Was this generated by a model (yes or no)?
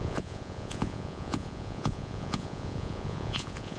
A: yes